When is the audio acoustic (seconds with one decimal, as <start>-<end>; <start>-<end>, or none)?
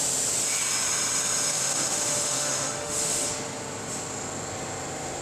0.0-1.5; 3.3-5.2